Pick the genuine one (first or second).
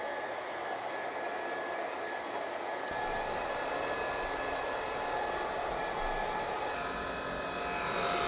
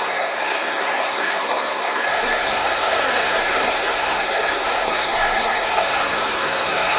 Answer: first